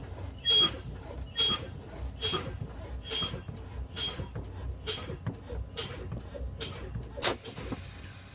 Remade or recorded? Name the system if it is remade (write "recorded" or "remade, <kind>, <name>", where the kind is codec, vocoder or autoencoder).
recorded